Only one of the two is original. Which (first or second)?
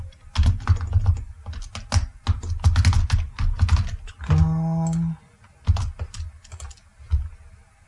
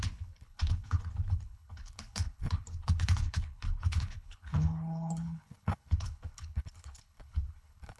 first